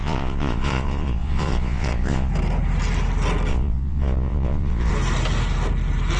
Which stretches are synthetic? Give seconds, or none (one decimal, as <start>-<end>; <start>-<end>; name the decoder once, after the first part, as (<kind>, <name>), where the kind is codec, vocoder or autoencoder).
0.0-2.3 (vocoder, Vocos); 3.5-4.9